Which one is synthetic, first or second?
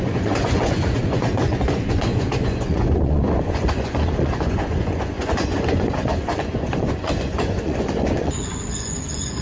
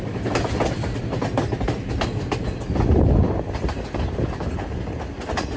first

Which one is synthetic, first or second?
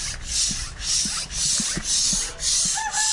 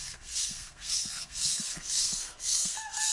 second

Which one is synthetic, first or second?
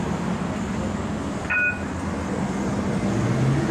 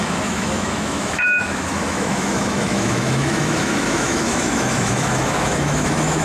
second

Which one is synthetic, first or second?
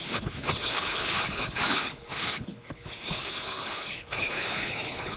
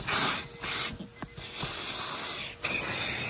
first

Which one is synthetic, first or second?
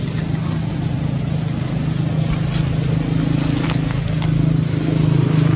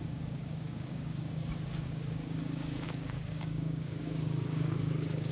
second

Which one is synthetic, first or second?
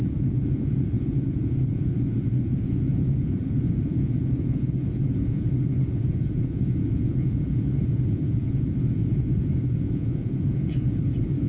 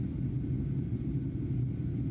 first